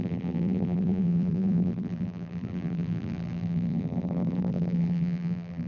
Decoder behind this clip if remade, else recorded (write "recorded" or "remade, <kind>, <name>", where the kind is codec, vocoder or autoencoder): remade, vocoder, BigVGAN v2